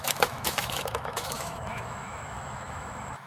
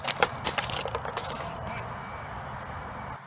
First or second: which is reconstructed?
first